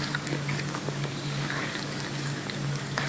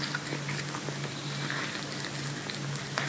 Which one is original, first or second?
second